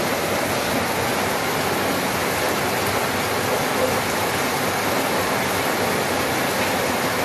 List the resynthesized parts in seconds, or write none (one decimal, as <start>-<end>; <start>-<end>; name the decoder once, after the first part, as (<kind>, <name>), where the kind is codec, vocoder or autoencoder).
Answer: none